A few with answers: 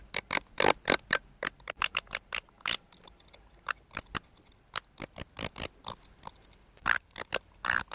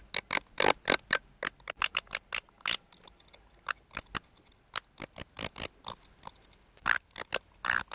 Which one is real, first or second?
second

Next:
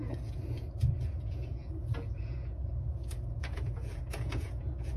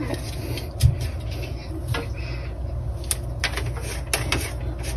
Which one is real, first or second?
second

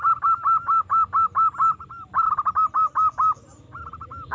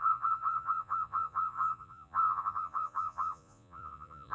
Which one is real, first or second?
first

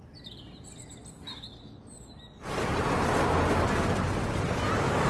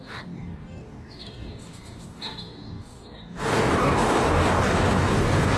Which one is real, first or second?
first